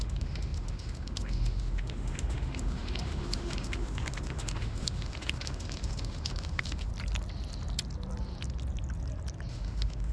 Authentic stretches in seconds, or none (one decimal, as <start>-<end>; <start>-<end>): 6.9-9.5